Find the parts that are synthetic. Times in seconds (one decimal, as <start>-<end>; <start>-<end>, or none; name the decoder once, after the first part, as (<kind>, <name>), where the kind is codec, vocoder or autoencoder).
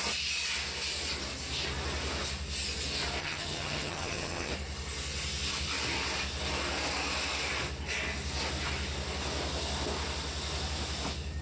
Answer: 3.2-4.5 (vocoder, HiFi-GAN)